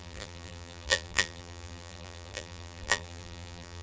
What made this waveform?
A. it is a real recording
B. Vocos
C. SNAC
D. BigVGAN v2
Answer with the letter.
D